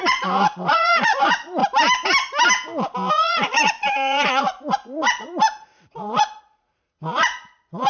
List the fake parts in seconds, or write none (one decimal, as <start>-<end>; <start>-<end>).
0.0-1.6; 3.1-7.9

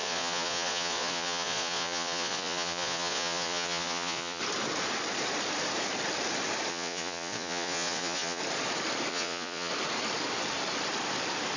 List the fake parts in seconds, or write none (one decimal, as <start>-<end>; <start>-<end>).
0.0-4.4; 6.7-8.4; 9.1-9.7